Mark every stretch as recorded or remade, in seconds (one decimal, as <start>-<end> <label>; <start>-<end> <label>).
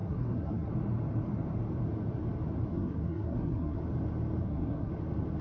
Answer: 0.0-0.7 remade; 0.7-2.7 recorded; 2.7-3.8 remade; 3.8-4.4 recorded; 4.4-4.9 remade; 4.9-5.4 recorded